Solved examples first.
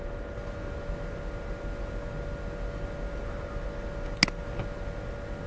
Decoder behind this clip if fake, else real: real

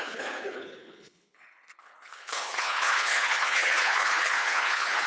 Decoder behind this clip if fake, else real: fake, codec, HILCodec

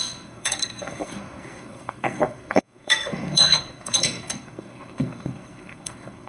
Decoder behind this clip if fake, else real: fake, codec, SNAC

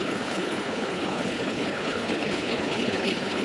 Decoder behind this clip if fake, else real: fake, codec, HILCodec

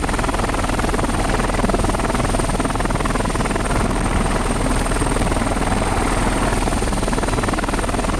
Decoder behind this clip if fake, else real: real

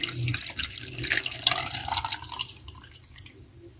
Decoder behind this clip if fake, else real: real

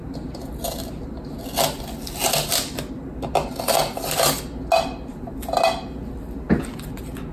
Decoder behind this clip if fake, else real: real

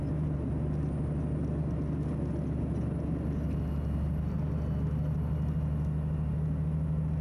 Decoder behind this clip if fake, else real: real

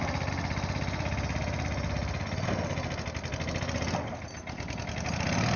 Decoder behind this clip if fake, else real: real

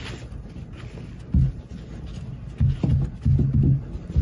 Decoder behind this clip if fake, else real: real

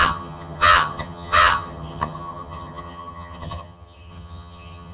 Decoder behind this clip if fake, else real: fake, vocoder, HiFi-GAN